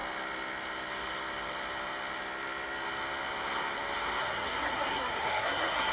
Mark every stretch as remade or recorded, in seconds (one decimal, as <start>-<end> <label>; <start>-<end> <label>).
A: 0.0-4.2 recorded; 4.2-5.9 remade